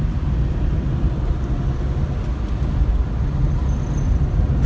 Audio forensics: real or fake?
real